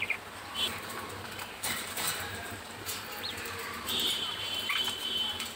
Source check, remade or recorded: remade